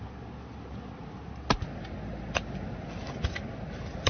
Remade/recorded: recorded